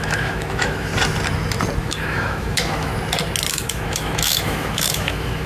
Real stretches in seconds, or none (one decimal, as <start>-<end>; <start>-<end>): 0.9-1.8; 2.9-3.5